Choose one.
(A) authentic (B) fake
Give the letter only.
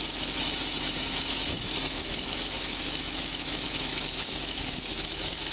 B